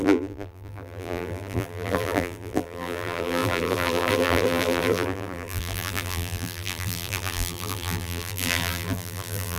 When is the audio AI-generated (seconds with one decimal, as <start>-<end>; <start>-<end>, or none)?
0.0-9.6